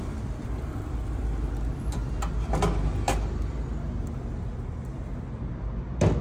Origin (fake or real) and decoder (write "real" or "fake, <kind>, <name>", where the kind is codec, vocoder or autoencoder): real